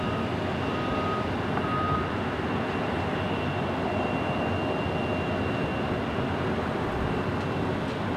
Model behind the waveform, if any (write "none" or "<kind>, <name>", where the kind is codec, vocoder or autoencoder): none